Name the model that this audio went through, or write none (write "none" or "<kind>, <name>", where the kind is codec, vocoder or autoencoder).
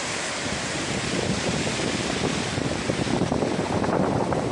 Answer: vocoder, BigVGAN v2